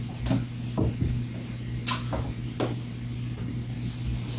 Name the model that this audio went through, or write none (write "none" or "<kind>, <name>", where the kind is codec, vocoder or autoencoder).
none